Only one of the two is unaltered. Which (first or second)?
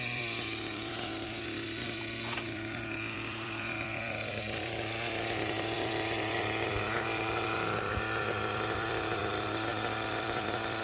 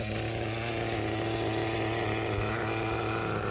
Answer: second